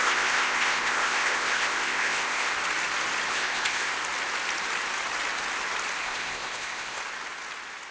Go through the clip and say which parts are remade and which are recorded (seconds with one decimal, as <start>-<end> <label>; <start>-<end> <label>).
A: 0.0-2.5 remade; 2.5-3.3 recorded; 3.3-3.9 remade; 3.9-6.0 recorded; 6.0-7.0 remade; 7.0-7.9 recorded